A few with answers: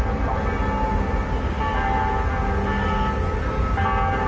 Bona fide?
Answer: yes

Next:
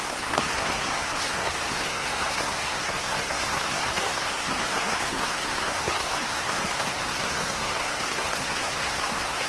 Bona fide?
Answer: no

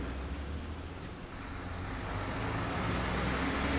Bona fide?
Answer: yes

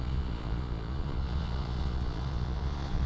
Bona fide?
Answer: no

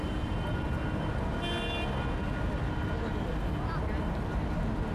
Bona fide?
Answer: yes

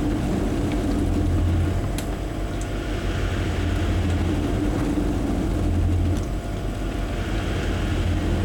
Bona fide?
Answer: yes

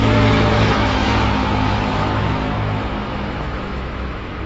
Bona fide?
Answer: no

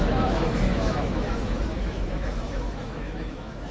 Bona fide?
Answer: no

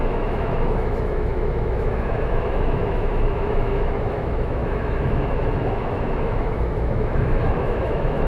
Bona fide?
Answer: no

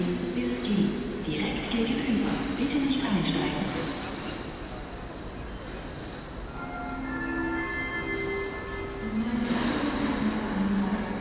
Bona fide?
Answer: yes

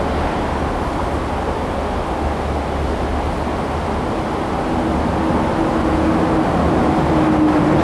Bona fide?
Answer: yes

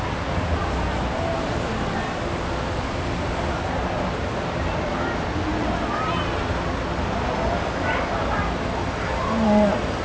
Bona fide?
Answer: yes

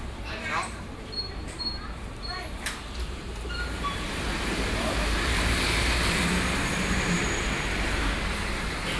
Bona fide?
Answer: no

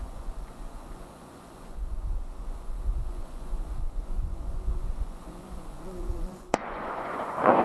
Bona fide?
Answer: no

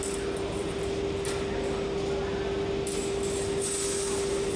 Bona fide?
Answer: yes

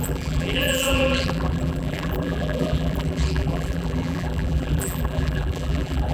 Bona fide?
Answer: no